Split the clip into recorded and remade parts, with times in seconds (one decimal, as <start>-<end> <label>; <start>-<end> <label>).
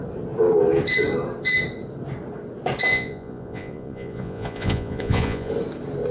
0.0-2.9 recorded; 2.9-5.5 remade; 5.5-6.1 recorded